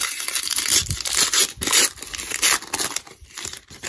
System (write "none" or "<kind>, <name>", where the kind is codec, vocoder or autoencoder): none